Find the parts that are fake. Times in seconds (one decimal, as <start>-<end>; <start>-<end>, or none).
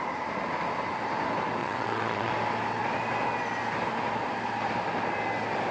1.6-2.3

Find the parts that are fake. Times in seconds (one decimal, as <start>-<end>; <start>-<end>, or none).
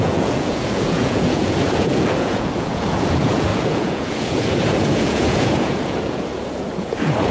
0.0-7.3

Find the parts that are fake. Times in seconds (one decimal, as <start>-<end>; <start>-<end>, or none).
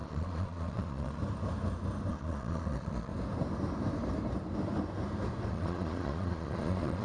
0.0-1.2; 2.1-3.1; 5.5-7.0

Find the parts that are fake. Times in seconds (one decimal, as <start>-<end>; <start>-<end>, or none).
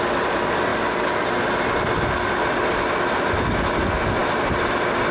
none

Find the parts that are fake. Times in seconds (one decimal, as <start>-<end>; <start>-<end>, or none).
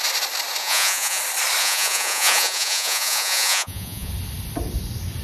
0.6-1.2; 1.6-4.1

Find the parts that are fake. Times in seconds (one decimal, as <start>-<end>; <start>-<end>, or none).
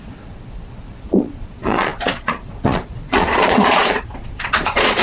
0.0-5.0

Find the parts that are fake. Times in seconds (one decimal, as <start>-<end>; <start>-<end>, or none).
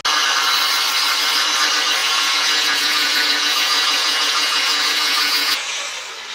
2.0-5.8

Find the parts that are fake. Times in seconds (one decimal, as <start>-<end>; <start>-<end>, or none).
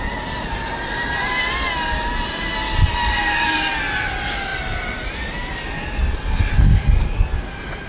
none